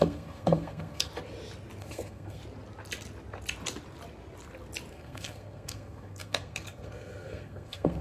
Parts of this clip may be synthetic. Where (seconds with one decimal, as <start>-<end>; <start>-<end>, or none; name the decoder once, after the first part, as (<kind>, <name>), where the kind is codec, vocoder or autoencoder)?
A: 0.0-1.1 (codec, SNAC); 1.8-2.4; 4.9-8.0